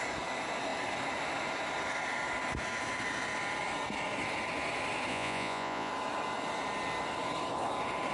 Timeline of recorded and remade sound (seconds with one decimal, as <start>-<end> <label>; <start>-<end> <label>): 0.0-5.1 recorded; 5.1-5.9 remade; 5.9-8.1 recorded